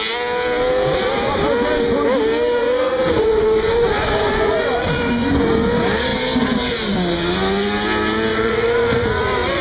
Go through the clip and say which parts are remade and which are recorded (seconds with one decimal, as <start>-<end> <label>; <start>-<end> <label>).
0.0-2.6 recorded; 2.6-5.5 remade; 5.5-8.3 recorded; 8.3-9.6 remade